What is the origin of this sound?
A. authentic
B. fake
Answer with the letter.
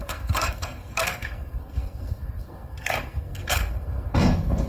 B